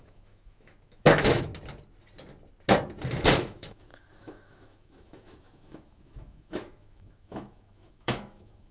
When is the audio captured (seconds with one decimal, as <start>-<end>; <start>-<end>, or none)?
1.5-3.4